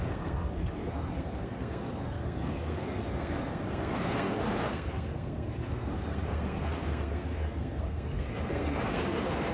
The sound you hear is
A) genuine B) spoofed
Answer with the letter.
B